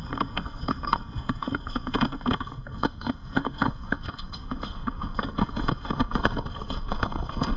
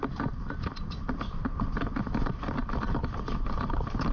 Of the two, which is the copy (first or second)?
first